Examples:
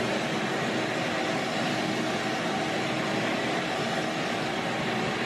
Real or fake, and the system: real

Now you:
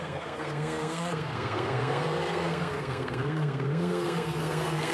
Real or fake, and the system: fake, codec, SNAC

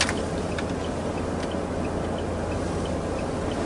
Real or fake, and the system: real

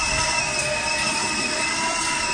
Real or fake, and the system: real